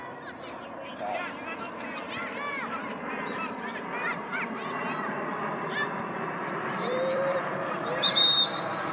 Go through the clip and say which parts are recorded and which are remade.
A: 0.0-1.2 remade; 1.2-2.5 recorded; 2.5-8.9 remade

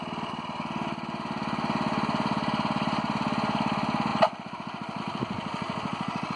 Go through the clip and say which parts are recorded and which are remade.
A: 0.0-6.4 recorded

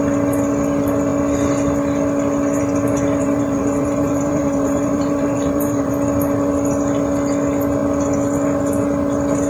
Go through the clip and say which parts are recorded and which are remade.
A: 0.0-3.2 recorded; 3.2-5.9 remade; 5.9-9.5 recorded

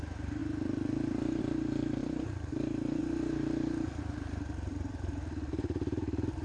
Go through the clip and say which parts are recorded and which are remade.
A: 0.0-6.4 remade